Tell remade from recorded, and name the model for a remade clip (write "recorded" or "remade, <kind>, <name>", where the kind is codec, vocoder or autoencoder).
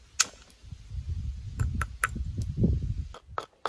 recorded